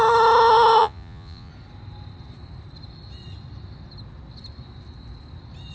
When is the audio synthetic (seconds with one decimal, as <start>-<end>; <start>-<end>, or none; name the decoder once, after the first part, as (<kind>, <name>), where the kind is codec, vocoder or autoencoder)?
0.8-1.5 (vocoder, Vocos)